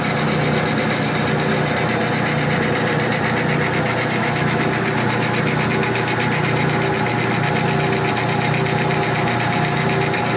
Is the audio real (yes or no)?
yes